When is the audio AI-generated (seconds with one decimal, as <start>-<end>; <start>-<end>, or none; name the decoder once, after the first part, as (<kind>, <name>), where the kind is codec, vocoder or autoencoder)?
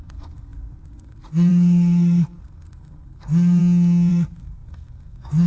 0.0-3.6 (codec, SNAC); 4.1-5.5